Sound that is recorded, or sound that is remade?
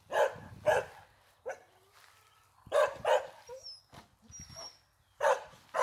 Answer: recorded